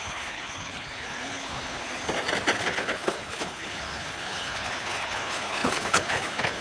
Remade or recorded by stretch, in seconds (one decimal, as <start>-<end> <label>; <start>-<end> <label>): 0.0-1.8 remade; 1.8-2.6 recorded; 2.6-6.6 remade

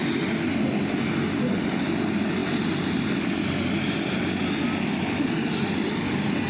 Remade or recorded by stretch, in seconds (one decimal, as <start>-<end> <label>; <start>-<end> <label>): 0.0-6.5 recorded

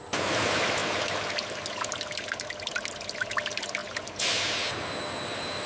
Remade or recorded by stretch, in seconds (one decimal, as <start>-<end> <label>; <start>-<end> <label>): 0.0-5.7 recorded

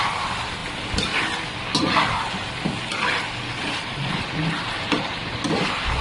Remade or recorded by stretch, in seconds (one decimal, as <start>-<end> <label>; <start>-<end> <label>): 0.0-6.0 recorded

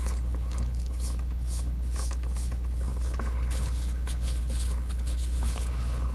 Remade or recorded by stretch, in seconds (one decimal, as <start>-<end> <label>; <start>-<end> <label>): 0.0-6.1 remade

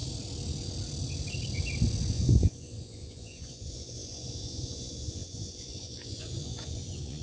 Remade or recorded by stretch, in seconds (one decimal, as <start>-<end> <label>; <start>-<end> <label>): 0.0-2.1 recorded; 2.1-7.2 remade